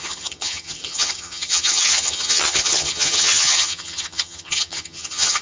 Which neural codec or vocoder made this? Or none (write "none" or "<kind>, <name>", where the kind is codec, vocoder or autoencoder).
vocoder, HiFi-GAN